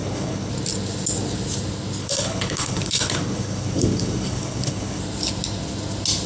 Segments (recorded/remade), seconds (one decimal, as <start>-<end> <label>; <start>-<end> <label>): 0.0-0.5 remade; 0.5-2.0 recorded; 2.0-5.0 remade; 5.0-6.3 recorded